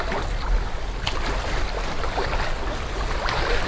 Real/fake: real